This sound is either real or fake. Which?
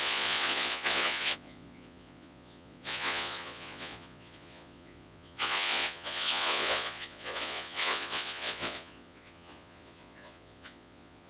fake